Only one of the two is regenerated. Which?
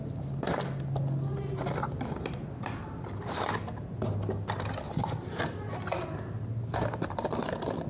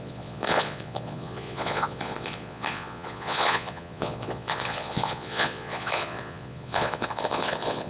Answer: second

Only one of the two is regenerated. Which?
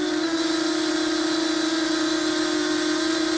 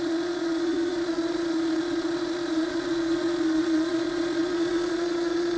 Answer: second